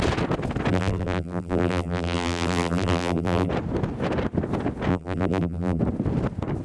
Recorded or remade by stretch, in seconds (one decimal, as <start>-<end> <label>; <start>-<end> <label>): 0.0-0.7 recorded; 0.7-3.5 remade; 3.5-4.9 recorded; 4.9-5.8 remade; 5.8-6.6 recorded